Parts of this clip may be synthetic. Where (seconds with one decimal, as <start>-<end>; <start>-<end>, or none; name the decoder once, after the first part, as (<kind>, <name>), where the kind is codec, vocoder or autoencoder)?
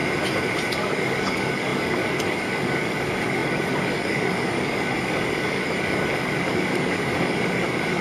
0.7-8.0 (codec, DAC)